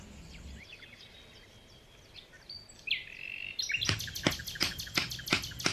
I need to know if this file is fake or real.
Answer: real